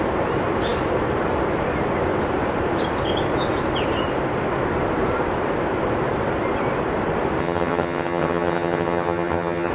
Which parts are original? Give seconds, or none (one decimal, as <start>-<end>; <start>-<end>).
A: 0.0-7.4